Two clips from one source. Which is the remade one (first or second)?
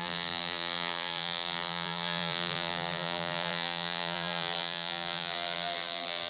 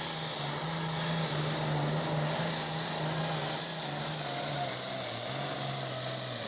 first